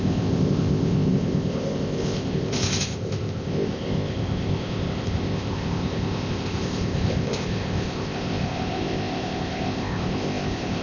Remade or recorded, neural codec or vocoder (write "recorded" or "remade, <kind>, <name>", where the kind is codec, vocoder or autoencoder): remade, codec, ZipCodec